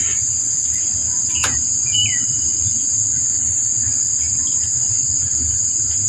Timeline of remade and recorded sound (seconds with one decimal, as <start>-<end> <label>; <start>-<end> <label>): 0.0-4.7 recorded; 4.7-5.3 remade; 5.3-6.1 recorded